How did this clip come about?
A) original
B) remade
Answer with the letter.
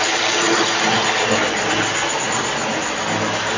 A